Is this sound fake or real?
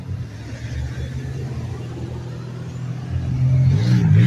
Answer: real